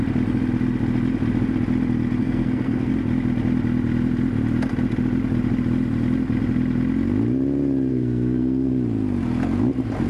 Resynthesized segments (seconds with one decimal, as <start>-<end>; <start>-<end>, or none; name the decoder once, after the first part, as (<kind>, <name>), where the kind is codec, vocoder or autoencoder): 2.2-2.9 (codec, SNAC); 7.9-8.7